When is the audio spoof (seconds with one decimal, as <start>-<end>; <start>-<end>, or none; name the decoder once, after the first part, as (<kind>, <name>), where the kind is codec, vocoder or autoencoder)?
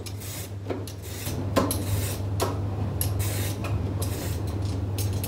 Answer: none